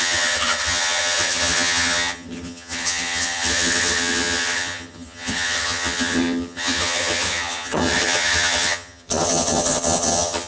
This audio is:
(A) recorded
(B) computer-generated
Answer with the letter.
B